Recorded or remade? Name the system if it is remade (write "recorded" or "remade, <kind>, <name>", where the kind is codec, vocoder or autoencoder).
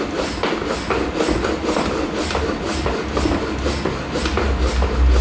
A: recorded